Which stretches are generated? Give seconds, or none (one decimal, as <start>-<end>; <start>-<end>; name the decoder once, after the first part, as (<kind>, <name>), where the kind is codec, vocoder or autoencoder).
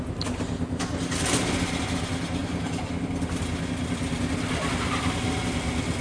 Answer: 2.4-3.4 (vocoder, BigVGAN v2)